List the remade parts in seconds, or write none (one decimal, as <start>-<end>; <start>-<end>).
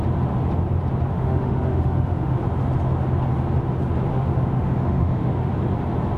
1.1-2.4; 4.1-5.5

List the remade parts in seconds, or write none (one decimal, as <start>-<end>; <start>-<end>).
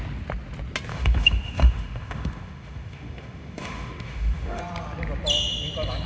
0.9-4.6